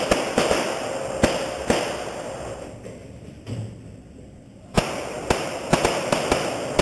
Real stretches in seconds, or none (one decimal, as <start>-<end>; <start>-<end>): 0.0-3.0; 3.5-6.8